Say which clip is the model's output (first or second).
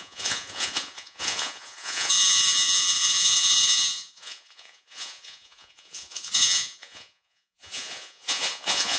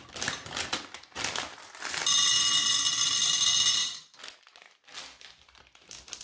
first